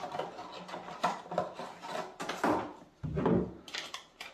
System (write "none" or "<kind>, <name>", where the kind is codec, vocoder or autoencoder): none